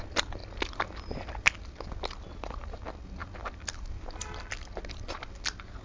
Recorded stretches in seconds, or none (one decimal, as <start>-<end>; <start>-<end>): 0.0-5.8